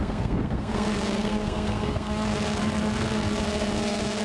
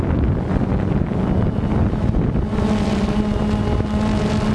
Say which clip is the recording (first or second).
second